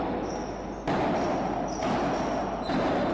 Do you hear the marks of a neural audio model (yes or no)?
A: no